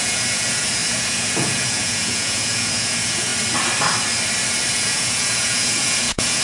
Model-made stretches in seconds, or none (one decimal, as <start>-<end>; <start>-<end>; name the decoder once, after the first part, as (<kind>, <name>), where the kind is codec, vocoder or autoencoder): 0.0-3.3 (vocoder, Vocos); 4.7-6.4